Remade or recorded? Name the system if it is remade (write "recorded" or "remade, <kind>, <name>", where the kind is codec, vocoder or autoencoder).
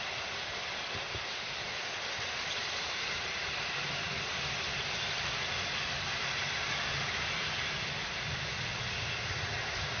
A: recorded